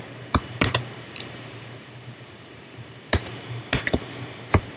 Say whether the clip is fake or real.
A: fake